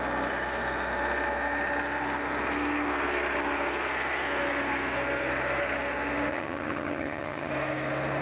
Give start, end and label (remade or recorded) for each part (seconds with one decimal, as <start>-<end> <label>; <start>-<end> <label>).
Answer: 0.0-6.3 recorded; 6.3-7.5 remade; 7.5-8.2 recorded